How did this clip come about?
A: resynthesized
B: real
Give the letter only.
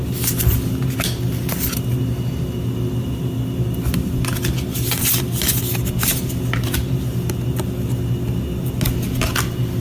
B